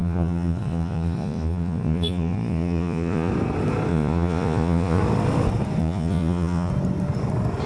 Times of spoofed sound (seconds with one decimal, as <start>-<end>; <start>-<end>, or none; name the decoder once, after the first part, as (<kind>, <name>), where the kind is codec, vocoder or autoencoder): 0.0-3.3 (vocoder, Vocos); 3.9-5.0; 5.8-6.7